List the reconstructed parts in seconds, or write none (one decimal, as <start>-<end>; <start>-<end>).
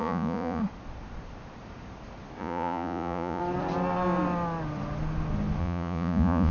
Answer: 0.0-0.6; 2.4-3.4; 5.6-6.5